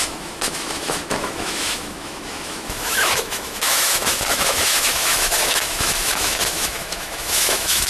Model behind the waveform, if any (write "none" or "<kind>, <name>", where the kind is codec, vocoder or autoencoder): autoencoder, DAC-VAE